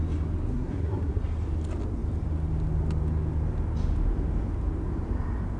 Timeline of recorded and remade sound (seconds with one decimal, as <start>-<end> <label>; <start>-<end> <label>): 0.0-0.5 recorded; 0.5-1.2 remade; 1.2-5.6 recorded